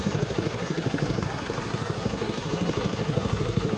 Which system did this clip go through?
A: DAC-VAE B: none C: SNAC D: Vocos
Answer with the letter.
C